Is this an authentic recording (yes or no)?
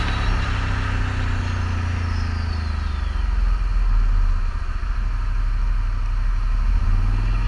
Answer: yes